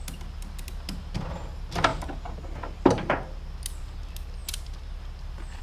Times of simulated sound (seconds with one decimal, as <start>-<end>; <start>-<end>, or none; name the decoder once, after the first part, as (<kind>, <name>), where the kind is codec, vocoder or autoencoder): none